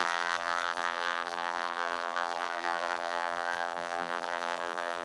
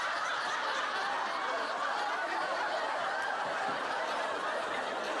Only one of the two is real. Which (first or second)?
second